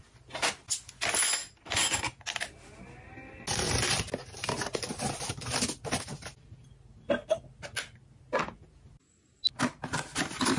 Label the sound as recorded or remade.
recorded